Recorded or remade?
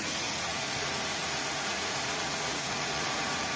remade